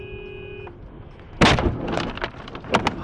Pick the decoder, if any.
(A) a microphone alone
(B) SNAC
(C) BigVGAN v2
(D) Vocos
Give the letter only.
A